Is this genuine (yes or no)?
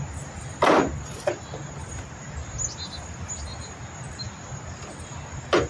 yes